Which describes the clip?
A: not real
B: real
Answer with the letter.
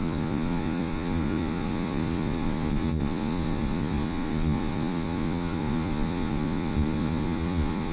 A